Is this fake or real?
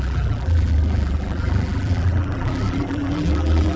fake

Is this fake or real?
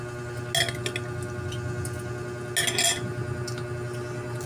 real